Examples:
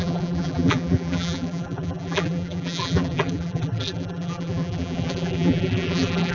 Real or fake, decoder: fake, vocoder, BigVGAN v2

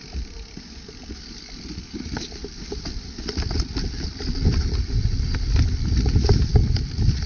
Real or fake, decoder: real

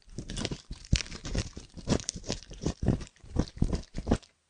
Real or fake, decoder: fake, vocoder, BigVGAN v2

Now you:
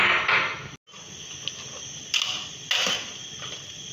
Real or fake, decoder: real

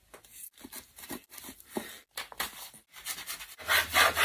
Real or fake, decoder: real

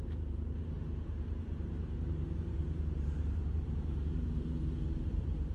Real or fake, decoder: fake, vocoder, BigVGAN v2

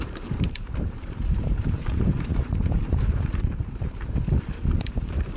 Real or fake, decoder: fake, vocoder, BigVGAN v2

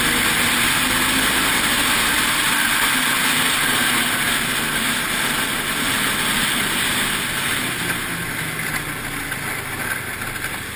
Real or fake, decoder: real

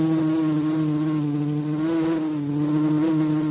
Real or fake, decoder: real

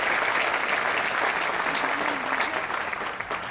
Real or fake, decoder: real